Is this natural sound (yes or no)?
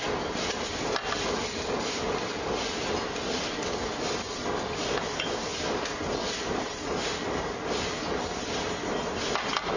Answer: yes